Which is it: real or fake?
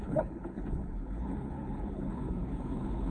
fake